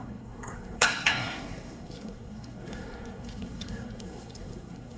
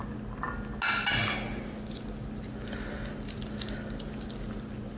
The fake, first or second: first